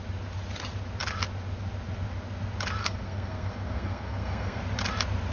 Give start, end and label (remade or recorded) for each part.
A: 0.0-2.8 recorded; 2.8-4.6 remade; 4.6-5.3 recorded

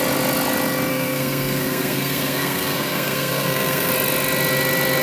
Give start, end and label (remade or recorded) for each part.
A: 0.0-0.9 recorded; 0.9-3.9 remade; 3.9-5.0 recorded

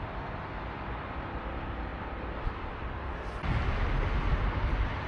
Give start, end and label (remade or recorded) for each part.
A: 0.0-5.1 recorded